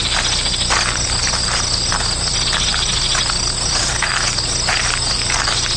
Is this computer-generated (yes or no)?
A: no